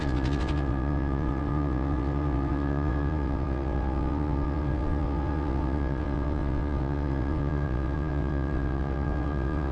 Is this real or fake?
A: fake